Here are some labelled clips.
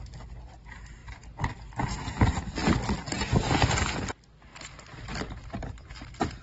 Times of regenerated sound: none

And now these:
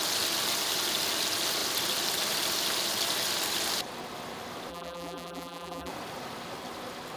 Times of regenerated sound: 4.7-5.9 (vocoder, BigVGAN v2)

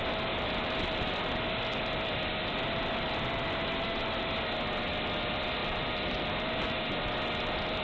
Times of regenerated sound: 0.4-3.0 (vocoder, BigVGAN v2); 5.6-6.3